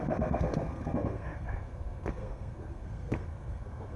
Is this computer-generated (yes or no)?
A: yes